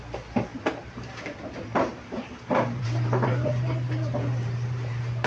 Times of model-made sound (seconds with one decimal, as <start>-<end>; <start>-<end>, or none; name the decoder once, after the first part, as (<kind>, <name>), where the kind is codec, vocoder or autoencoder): 0.5-1.4 (vocoder, BigVGAN v2); 1.9-5.3